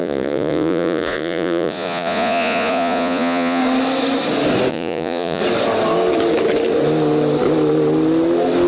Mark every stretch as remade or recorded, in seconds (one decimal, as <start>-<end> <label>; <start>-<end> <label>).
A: 0.0-3.6 remade; 3.6-4.7 recorded; 4.7-5.4 remade; 5.4-8.7 recorded